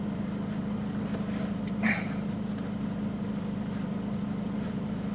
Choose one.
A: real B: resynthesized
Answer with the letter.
A